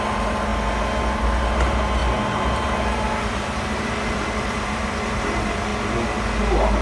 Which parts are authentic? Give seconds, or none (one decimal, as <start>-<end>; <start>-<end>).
0.5-1.0; 5.7-6.8

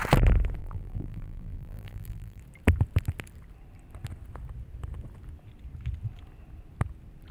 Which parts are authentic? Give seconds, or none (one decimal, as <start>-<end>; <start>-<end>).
0.0-0.6; 2.4-7.3

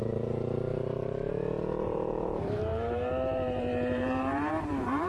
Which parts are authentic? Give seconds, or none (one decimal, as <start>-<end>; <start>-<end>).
none